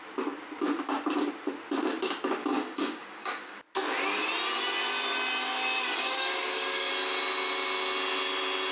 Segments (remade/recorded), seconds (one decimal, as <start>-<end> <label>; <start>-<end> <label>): 0.0-2.4 recorded; 2.4-3.6 remade; 3.6-5.9 recorded; 5.9-6.9 remade; 6.9-8.7 recorded